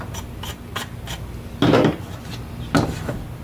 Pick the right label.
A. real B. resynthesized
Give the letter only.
A